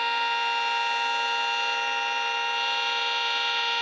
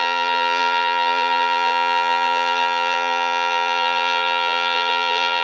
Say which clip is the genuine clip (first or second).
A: first